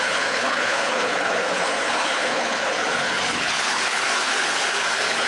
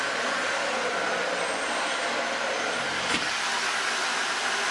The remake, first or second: first